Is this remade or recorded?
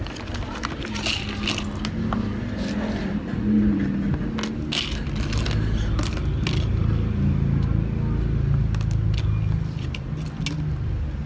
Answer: recorded